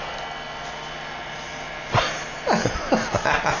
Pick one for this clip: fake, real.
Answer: real